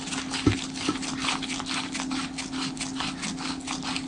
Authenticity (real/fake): real